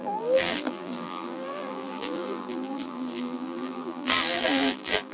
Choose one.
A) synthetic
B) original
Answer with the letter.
A